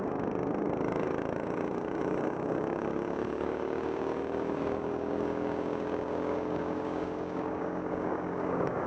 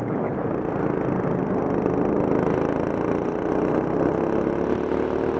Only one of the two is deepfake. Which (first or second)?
first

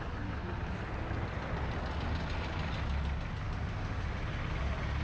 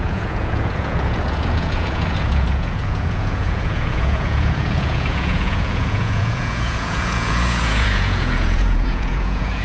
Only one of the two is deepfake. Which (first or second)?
second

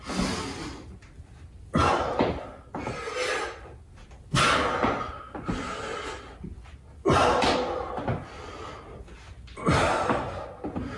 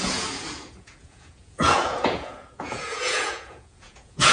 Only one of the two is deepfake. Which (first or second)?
second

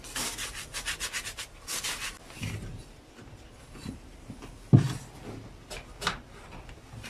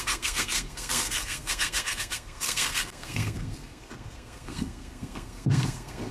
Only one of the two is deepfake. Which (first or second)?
second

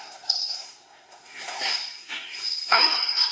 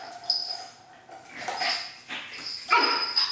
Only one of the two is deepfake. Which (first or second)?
first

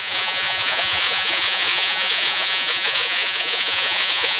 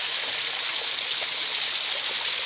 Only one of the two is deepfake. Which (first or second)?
first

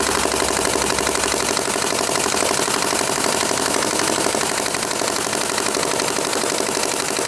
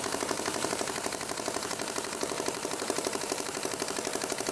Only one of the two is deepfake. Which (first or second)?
second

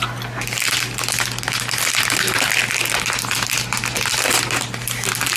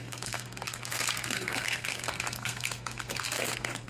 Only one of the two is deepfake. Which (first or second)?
second